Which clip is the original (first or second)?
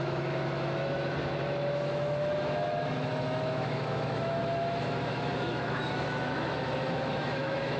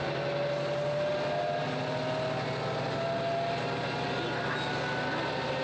second